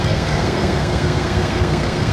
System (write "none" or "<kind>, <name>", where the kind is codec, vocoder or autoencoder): codec, SNAC